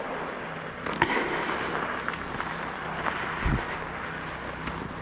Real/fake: real